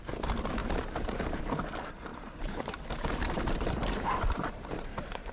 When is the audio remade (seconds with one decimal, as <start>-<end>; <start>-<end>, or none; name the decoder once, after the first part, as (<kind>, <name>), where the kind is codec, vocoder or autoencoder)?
0.6-1.4 (vocoder, BigVGAN v2); 2.1-5.3